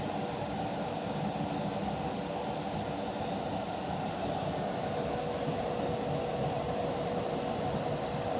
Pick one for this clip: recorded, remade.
recorded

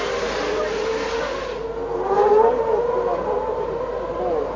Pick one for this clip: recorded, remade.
recorded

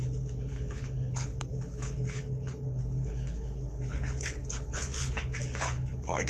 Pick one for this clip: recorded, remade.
remade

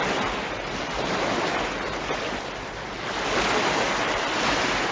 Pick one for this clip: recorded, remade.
recorded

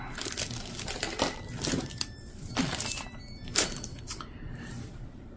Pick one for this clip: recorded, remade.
remade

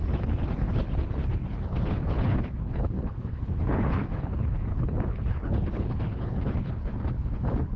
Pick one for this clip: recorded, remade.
remade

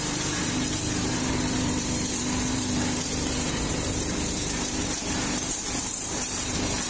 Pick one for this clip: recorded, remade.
remade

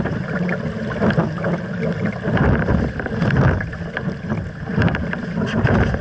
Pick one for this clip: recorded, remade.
recorded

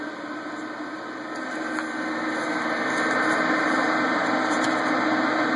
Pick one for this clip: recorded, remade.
recorded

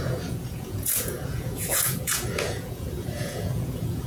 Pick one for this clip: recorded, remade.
remade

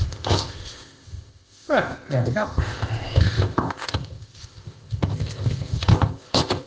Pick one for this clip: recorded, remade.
remade